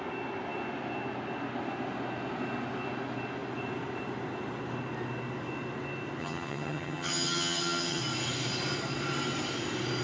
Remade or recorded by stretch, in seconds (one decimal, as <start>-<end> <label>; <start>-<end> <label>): 0.0-6.2 recorded; 6.2-8.0 remade; 8.0-10.0 recorded